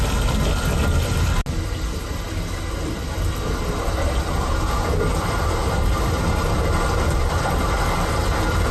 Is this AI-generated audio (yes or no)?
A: no